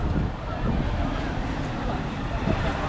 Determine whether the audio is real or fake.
real